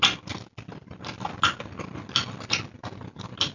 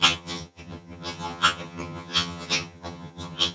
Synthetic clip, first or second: second